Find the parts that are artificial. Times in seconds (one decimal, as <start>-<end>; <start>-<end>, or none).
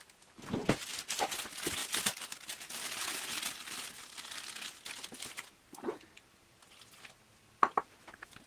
none